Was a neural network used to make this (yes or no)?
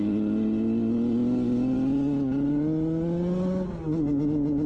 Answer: no